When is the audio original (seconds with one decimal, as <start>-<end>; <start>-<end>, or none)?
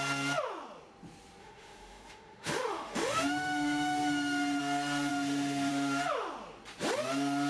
0.0-1.4; 4.6-5.1; 5.7-7.5